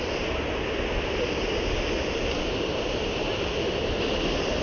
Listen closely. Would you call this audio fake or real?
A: real